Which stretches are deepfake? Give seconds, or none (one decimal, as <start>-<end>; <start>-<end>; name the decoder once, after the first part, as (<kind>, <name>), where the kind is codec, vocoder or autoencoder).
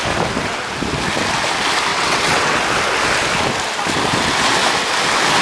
1.9-2.6 (vocoder, WaveNeXt)